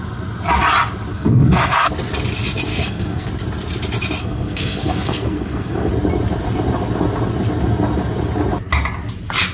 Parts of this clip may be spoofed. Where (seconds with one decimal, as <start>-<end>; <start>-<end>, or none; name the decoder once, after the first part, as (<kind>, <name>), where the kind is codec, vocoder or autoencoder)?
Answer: 1.1-1.9 (codec, SNAC); 2.7-3.3; 4.2-5.9